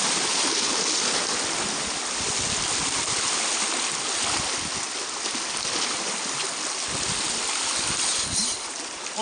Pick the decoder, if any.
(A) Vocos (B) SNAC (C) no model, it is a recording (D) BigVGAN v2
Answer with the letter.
C